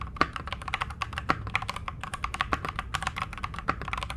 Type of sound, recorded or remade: remade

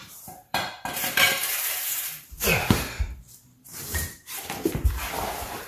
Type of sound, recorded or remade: remade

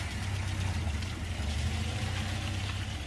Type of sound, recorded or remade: recorded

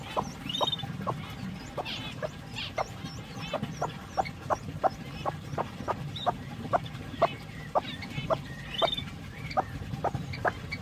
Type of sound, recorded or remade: remade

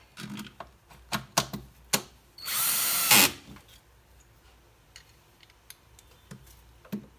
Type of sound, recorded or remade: recorded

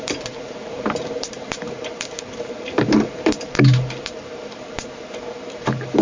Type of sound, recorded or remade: remade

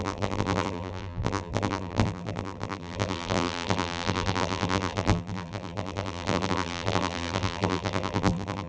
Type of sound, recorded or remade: remade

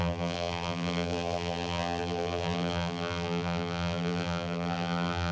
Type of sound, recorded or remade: remade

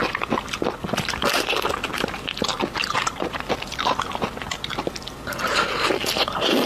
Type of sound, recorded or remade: recorded